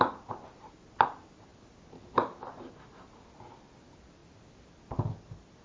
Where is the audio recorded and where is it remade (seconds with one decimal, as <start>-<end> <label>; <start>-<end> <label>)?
0.0-5.6 recorded